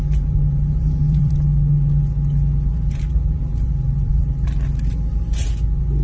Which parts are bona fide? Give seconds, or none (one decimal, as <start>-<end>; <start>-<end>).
1.3-2.7; 4.2-6.0